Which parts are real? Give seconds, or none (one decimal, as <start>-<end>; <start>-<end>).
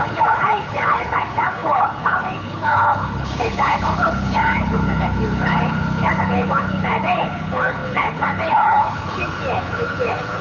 none